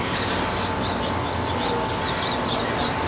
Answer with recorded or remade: recorded